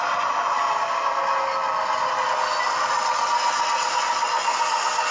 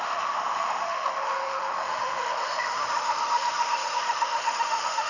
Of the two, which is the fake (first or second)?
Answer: second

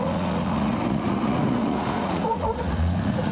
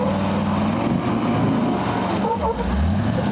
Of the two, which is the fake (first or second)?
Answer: first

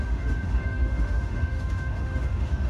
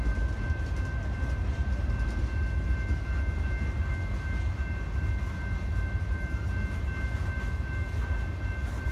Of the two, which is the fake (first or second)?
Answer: first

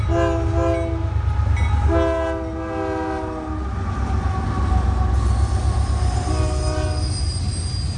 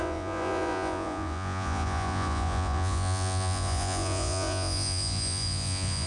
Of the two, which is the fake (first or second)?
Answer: second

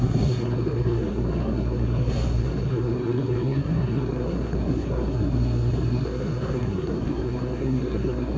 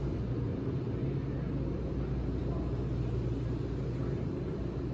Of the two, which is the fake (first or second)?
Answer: first